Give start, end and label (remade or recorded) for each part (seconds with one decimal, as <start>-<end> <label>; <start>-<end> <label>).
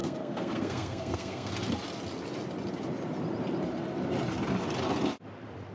0.0-1.5 remade; 1.5-5.7 recorded